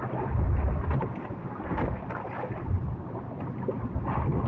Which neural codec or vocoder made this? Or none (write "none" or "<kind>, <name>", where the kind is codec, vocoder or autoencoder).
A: none